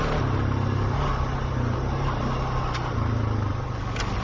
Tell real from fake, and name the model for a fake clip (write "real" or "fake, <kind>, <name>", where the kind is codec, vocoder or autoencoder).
real